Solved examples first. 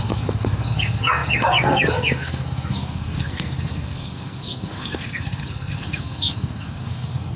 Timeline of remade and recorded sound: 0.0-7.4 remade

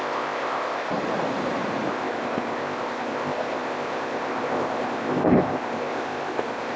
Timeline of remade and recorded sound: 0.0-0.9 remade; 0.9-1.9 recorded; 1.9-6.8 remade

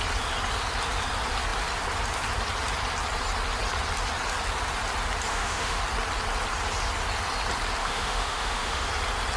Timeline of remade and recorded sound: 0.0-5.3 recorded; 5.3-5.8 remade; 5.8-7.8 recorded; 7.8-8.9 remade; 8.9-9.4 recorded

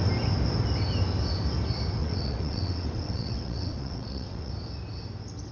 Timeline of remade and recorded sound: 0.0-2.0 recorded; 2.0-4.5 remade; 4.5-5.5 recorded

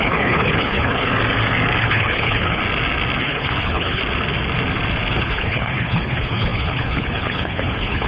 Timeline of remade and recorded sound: 0.0-1.1 remade; 1.1-1.8 recorded; 1.8-2.6 remade; 2.6-3.2 recorded; 3.2-4.0 remade; 4.0-5.1 recorded; 5.1-8.1 remade

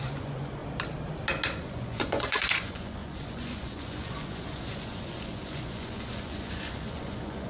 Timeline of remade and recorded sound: 0.0-0.6 remade; 0.6-1.6 recorded; 1.6-7.5 remade

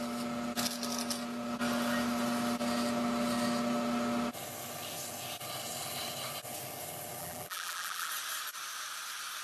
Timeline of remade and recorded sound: 0.0-7.2 recorded; 7.2-8.1 remade; 8.1-9.4 recorded